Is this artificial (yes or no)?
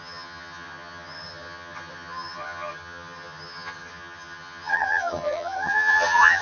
yes